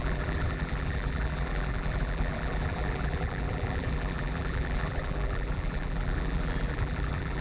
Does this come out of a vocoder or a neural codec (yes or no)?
yes